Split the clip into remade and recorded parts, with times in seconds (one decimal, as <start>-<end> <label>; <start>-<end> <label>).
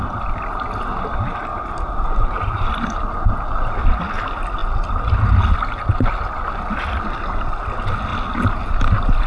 0.0-1.5 recorded; 1.5-2.7 remade; 2.7-9.3 recorded